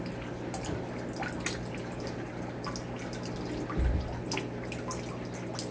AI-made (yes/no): no